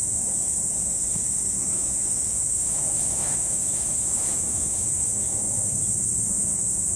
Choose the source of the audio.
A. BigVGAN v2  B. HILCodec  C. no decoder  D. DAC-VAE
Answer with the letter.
D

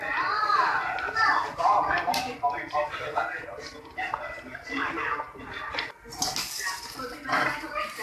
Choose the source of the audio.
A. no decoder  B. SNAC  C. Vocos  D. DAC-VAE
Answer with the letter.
A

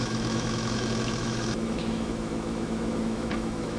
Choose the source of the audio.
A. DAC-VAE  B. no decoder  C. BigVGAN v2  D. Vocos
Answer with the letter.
A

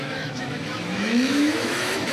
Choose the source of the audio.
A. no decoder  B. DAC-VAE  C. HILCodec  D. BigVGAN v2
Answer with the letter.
B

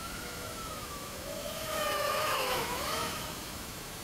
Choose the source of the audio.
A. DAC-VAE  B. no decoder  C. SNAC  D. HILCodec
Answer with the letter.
A